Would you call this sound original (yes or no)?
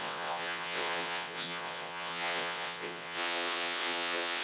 no